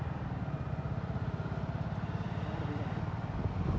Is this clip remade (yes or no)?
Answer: no